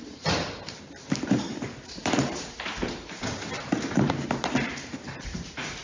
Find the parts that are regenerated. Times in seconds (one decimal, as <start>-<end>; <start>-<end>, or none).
0.0-5.8